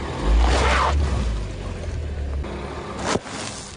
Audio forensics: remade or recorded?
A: recorded